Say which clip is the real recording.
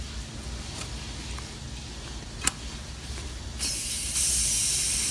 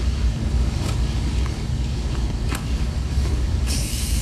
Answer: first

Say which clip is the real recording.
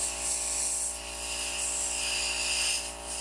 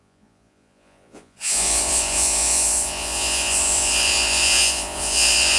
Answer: first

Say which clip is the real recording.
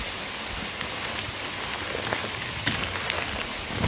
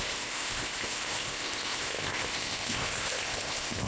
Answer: first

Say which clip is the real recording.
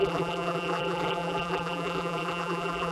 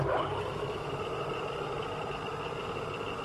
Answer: second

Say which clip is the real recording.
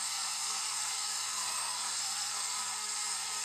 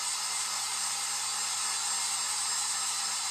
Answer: second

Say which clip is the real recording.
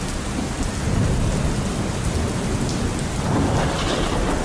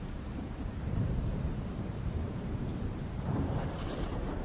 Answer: first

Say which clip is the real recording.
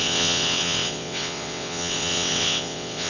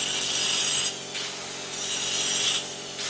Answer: second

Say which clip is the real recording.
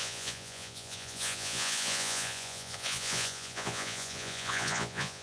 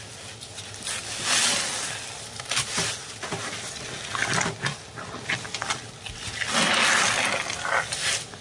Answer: second